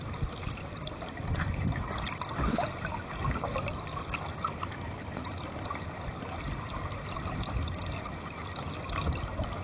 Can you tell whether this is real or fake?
real